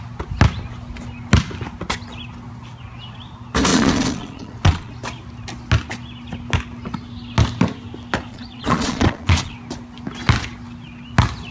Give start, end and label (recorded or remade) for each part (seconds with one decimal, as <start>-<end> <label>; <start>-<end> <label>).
0.0-3.7 recorded; 3.7-4.9 remade; 4.9-8.3 recorded; 8.3-9.5 remade; 9.5-11.5 recorded